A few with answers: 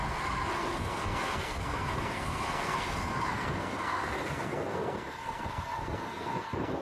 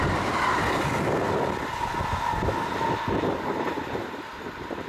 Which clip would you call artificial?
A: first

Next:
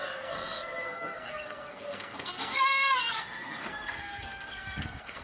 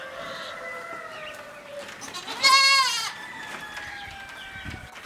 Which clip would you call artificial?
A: first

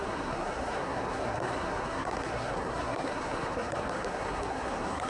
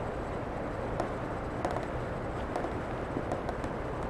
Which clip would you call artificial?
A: first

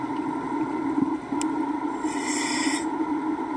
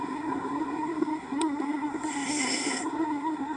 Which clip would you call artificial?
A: second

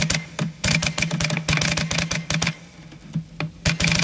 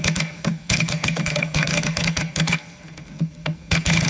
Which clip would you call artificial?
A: second